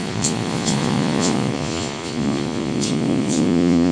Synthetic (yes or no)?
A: yes